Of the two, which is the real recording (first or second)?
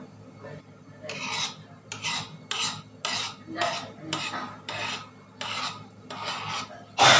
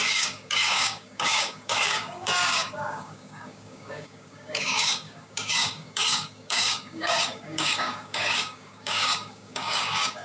first